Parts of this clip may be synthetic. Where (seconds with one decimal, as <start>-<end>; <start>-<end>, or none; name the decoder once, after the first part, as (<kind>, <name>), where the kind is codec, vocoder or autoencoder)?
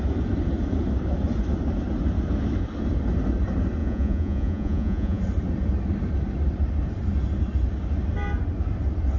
3.8-5.2 (vocoder, Vocos)